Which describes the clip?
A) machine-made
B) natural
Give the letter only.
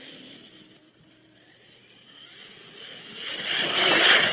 B